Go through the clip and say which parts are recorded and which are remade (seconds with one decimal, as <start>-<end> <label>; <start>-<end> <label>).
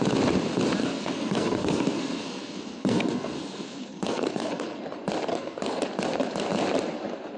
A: 0.0-0.8 recorded; 0.8-4.8 remade; 4.8-5.3 recorded; 5.3-5.8 remade; 5.8-7.4 recorded